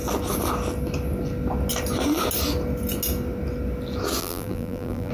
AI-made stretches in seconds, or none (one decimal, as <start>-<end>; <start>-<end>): 4.2-5.1